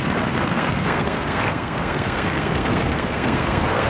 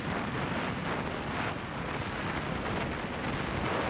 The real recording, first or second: second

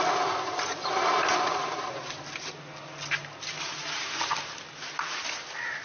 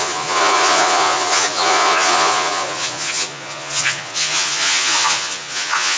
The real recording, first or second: first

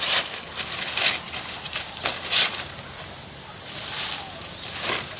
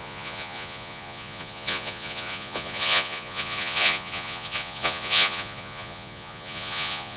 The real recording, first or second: first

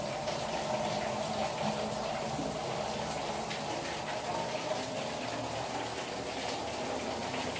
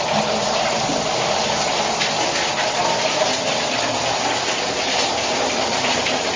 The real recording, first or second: first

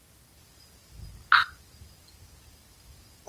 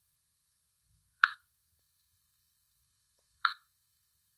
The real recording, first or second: first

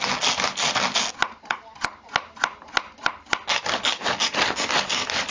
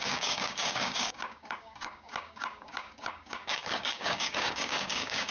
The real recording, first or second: first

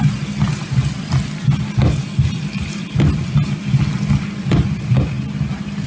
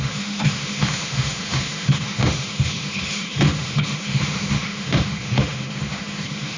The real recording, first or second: first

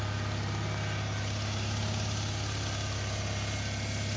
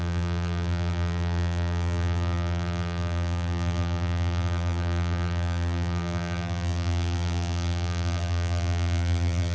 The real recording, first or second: first